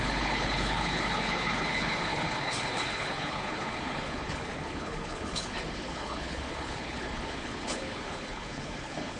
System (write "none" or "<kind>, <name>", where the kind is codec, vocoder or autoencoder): codec, HILCodec